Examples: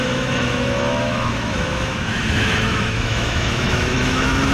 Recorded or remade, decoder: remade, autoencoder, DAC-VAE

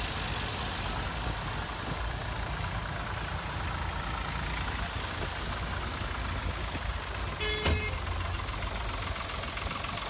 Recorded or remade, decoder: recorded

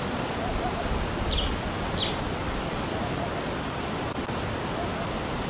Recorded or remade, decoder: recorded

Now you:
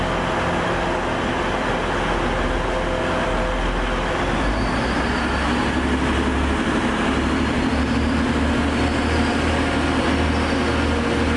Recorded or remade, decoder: recorded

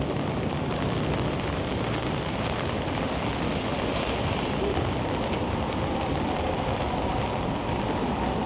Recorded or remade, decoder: recorded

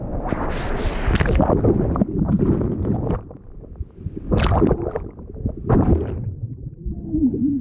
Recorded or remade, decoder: recorded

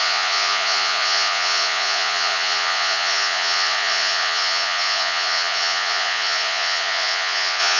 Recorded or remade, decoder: remade, vocoder, Vocos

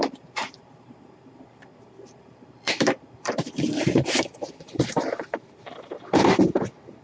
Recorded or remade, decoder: remade, vocoder, BigVGAN v2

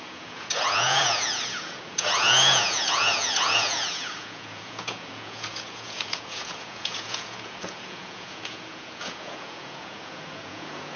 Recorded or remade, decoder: remade, vocoder, Vocos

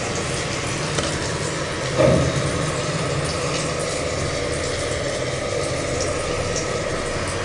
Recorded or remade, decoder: recorded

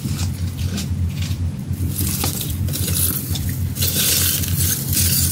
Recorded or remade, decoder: remade, vocoder, BigVGAN v2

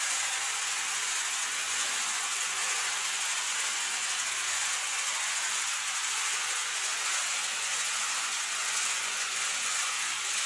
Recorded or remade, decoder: remade, vocoder, Vocos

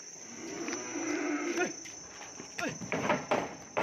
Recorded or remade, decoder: remade, vocoder, BigVGAN v2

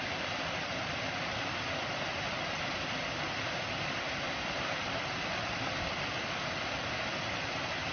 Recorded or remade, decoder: recorded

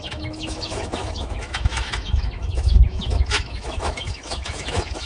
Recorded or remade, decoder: remade, autoencoder, DAC-VAE